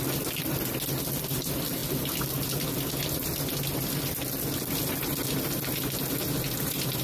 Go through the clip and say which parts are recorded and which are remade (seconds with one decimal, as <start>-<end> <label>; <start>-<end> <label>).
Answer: 0.0-7.0 recorded